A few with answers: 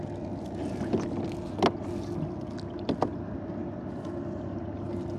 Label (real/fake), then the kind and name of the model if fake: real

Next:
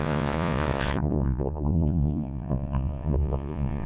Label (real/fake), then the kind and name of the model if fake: fake, vocoder, Vocos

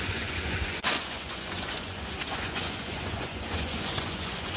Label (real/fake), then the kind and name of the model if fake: fake, vocoder, Vocos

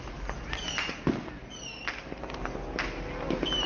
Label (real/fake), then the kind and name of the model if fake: real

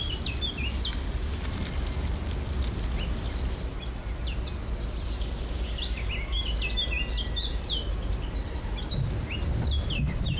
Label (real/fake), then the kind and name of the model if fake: real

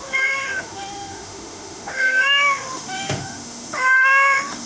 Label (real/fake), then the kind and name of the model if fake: fake, autoencoder, DAC-VAE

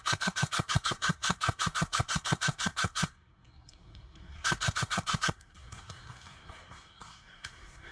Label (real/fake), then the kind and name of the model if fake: fake, codec, SNAC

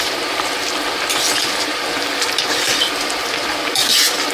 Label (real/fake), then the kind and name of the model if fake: fake, vocoder, BigVGAN v2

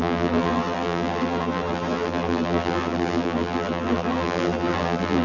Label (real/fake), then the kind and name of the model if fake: fake, vocoder, BigVGAN v2